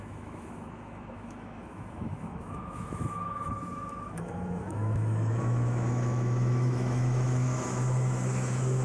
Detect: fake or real fake